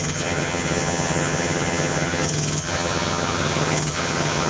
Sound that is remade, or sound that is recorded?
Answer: remade